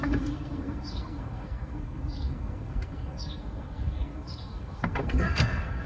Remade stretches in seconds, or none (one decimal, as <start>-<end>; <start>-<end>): 0.0-5.9